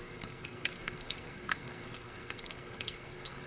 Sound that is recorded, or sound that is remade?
remade